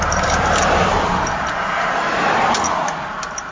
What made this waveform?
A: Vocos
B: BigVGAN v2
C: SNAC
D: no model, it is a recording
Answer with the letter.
B